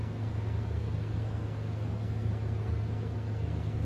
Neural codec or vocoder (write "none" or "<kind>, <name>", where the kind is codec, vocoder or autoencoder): codec, SNAC